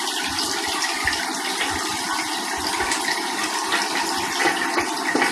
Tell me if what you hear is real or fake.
real